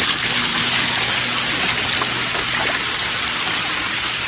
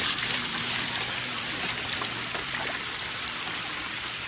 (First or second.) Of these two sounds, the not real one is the second